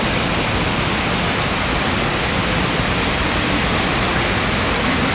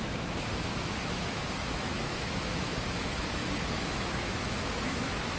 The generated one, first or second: second